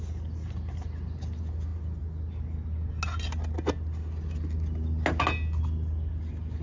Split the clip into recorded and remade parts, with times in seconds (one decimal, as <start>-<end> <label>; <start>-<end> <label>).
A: 0.0-6.6 recorded